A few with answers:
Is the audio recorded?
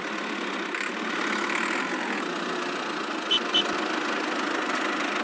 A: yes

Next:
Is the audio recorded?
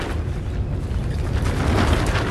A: yes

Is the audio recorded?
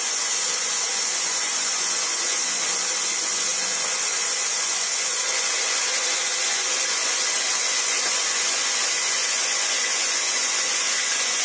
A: no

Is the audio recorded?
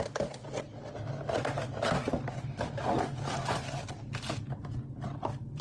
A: yes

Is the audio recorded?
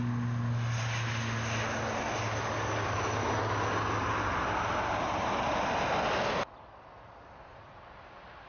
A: yes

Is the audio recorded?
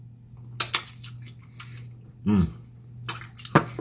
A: yes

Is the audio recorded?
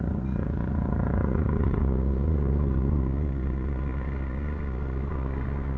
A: no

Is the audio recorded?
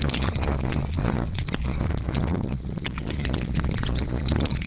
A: no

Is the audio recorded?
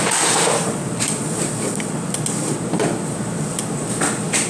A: yes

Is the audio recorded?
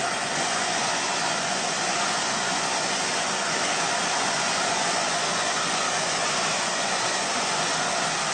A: no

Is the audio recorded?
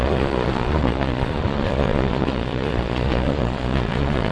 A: no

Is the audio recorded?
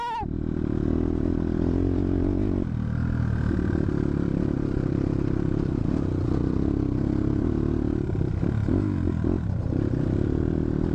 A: yes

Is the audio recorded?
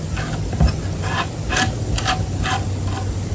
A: yes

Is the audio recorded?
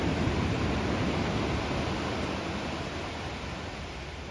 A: yes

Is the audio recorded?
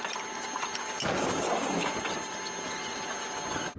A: yes